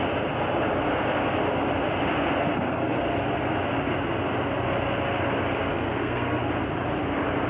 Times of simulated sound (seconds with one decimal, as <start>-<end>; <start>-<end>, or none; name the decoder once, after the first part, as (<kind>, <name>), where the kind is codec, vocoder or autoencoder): 2.5-3.0 (codec, SNAC); 5.7-6.5